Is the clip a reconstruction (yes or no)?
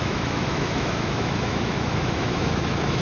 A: yes